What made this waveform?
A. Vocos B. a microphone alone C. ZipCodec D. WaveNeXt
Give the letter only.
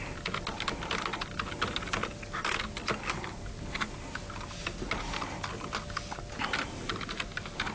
B